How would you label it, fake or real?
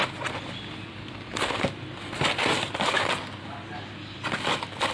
real